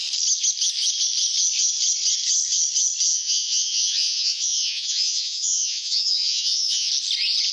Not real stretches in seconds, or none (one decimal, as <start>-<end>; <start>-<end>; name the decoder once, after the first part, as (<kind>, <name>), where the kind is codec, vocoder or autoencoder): 3.1-6.9 (vocoder, Vocos)